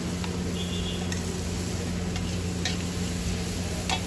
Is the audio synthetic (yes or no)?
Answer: no